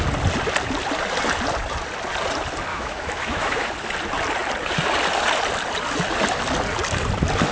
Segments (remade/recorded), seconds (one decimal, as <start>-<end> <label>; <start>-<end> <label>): 0.0-2.7 recorded; 2.7-3.7 remade; 3.7-7.5 recorded